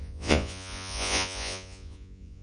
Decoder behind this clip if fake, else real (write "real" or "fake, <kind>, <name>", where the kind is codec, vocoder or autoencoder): fake, vocoder, Vocos